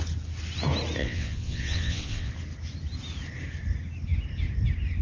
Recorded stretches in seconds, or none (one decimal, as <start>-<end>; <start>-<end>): 0.0-1.0; 2.3-5.0